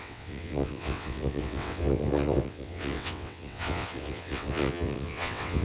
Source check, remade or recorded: remade